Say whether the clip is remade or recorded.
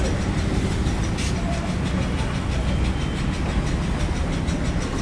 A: recorded